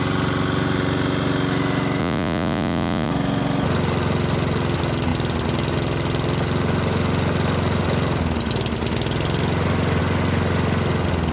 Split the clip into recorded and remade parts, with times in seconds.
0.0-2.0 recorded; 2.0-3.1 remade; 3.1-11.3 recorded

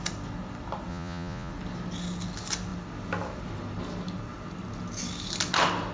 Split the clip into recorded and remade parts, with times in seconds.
0.0-0.9 recorded; 0.9-1.5 remade; 1.5-5.9 recorded